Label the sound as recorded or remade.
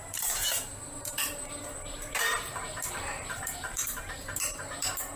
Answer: remade